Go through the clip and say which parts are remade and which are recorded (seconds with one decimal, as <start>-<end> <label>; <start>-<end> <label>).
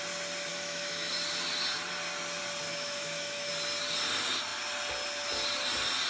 0.0-0.5 recorded; 0.5-1.1 remade; 1.1-2.7 recorded; 2.7-3.5 remade; 3.5-6.1 recorded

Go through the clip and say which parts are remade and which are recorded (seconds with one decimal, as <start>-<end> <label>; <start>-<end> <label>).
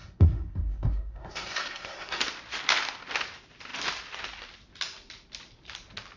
0.0-2.2 remade; 2.2-6.2 recorded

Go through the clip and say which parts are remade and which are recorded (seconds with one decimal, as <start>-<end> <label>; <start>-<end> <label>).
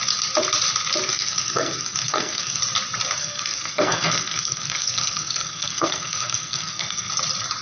0.0-1.1 recorded; 1.1-2.6 remade; 2.6-3.2 recorded; 3.2-7.1 remade; 7.1-7.6 recorded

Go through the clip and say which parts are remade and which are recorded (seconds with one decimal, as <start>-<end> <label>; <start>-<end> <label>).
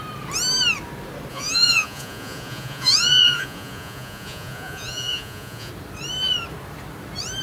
0.0-1.3 recorded; 1.3-5.7 remade; 5.7-7.4 recorded